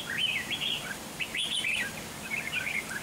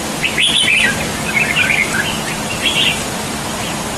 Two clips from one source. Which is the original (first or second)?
second